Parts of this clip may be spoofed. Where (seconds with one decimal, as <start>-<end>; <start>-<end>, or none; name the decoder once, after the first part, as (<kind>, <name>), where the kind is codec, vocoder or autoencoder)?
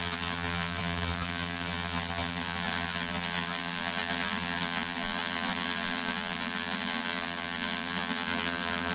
0.0-8.9 (vocoder, BigVGAN v2)